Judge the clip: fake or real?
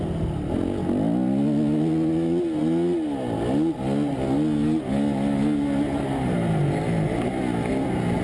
real